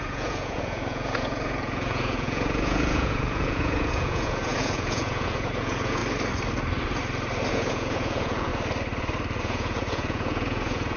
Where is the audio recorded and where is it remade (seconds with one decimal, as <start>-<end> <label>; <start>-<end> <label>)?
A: 0.0-6.0 remade; 6.0-7.5 recorded; 7.5-8.5 remade; 8.5-9.4 recorded; 9.4-11.0 remade